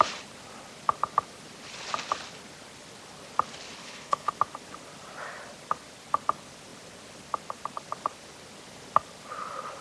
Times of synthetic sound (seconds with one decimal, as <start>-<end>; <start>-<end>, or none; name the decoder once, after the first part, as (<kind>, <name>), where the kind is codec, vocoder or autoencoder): 3.8-4.3 (codec, HILCodec)